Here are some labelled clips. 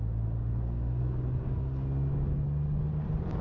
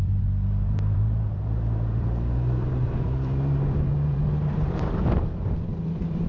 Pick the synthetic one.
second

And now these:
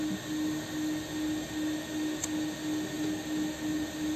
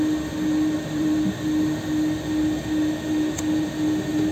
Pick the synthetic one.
second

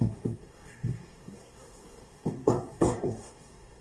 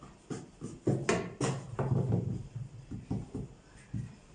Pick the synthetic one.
first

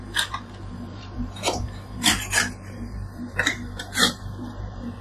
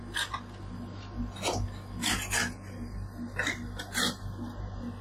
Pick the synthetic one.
first